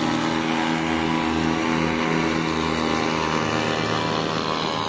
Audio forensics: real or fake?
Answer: real